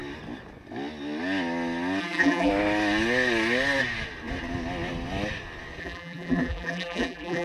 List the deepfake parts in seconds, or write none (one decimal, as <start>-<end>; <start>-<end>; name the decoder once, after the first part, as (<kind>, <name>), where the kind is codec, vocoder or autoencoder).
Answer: 2.0-2.5 (vocoder, BigVGAN v2); 5.8-7.4

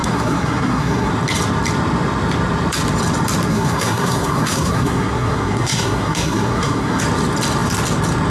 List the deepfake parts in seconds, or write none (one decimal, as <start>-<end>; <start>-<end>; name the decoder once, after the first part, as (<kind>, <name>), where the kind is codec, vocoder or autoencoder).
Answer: 0.0-1.1 (codec, SNAC); 3.5-7.0

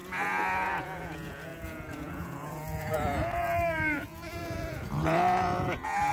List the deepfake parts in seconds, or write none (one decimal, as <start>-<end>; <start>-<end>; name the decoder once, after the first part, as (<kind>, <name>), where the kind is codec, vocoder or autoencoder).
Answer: 0.0-6.1 (vocoder, Vocos)

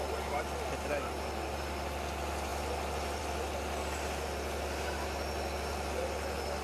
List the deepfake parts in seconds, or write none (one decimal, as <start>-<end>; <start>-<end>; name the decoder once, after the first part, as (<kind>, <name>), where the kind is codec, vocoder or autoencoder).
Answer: 0.0-6.6 (vocoder, BigVGAN v2)

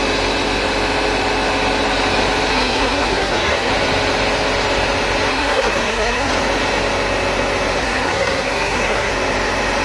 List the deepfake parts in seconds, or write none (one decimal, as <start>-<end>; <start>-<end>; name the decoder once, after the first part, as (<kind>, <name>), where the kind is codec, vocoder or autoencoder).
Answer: 2.5-3.7 (codec, SNAC); 5.3-6.3; 7.8-9.1

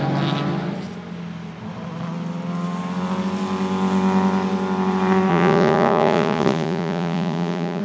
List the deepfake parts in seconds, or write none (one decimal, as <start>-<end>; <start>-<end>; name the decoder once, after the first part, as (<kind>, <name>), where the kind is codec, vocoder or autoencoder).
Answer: 5.3-7.8 (vocoder, Vocos)

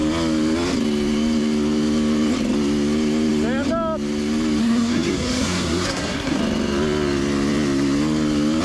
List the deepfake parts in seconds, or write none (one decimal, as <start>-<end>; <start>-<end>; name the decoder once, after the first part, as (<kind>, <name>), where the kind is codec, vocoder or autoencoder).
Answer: 4.6-6.4 (codec, SNAC)

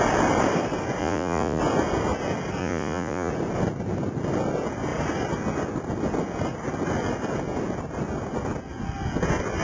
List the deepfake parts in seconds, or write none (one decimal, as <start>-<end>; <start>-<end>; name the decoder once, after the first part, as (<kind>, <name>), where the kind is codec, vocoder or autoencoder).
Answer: 1.0-1.6 (vocoder, Vocos); 2.6-3.3